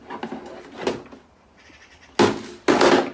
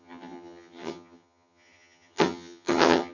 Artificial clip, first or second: second